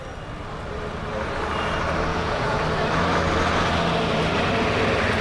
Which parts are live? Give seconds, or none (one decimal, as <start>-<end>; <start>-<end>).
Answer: 0.0-2.1; 2.6-5.2